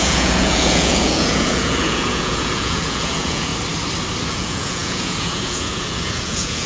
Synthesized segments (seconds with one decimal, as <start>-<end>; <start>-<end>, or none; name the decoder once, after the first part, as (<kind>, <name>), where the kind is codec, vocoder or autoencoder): 0.0-3.5 (vocoder, Vocos); 4.3-6.7